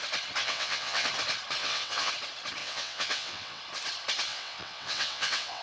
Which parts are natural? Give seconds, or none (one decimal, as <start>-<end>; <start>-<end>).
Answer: 0.0-0.4; 1.1-1.6; 2.1-2.6; 3.6-4.3